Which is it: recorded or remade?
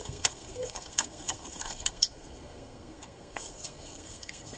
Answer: remade